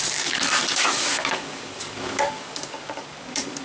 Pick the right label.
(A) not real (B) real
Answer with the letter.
A